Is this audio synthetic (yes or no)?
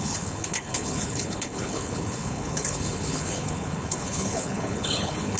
yes